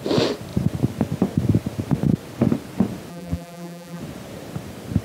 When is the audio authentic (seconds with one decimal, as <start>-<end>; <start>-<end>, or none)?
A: 0.0-3.1; 4.0-5.0

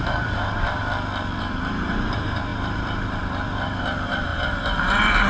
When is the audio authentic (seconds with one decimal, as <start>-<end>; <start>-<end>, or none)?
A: 0.8-1.4

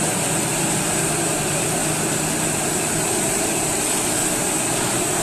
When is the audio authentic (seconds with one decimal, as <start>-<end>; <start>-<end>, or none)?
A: 1.8-2.4; 4.2-4.8

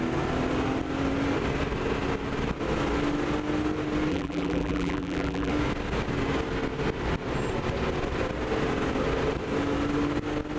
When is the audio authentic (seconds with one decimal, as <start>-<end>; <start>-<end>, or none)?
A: 0.0-4.1; 5.5-10.6

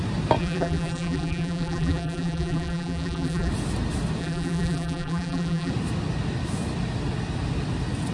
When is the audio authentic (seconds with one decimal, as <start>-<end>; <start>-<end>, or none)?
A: 0.0-0.4; 3.5-4.2; 5.7-8.1

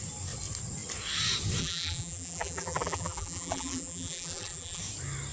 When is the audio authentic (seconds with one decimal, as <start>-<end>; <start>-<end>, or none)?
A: 0.0-1.6; 4.8-5.3

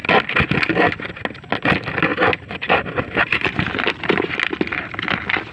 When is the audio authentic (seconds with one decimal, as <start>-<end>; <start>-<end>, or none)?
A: 0.0-2.1; 4.3-5.5